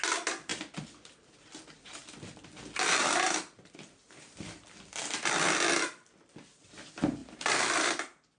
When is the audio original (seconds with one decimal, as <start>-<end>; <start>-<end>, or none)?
0.0-7.2; 7.9-8.4

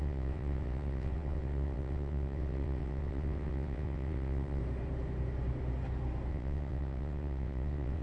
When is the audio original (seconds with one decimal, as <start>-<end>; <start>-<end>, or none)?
4.6-6.3